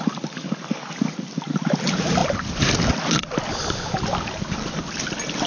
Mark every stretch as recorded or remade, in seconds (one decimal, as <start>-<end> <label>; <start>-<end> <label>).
0.0-5.5 recorded

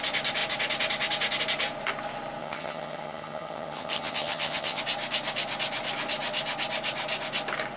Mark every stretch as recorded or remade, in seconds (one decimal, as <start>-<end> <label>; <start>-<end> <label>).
0.0-2.4 recorded; 2.4-4.8 remade; 4.8-7.8 recorded

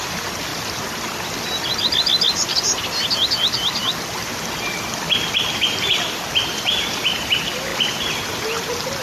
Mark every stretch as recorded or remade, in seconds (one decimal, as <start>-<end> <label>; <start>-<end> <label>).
0.0-0.5 remade; 0.5-5.3 recorded; 5.3-7.7 remade; 7.7-8.2 recorded; 8.2-9.0 remade

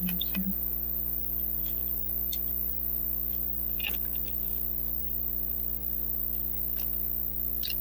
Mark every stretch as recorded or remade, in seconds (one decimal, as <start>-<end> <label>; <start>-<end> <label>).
0.0-7.8 recorded

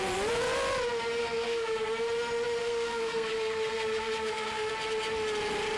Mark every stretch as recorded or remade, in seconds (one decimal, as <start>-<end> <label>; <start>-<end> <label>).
0.0-1.2 recorded; 1.2-1.8 remade; 1.8-2.6 recorded; 2.6-4.7 remade; 4.7-5.8 recorded

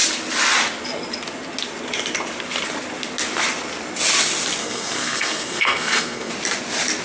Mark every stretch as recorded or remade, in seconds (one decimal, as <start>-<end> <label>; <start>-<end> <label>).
0.0-4.6 recorded; 4.6-6.3 remade; 6.3-7.0 recorded

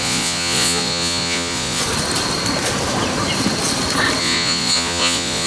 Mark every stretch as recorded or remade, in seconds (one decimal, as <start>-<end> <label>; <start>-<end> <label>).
0.0-1.8 remade; 1.8-4.2 recorded; 4.2-5.5 remade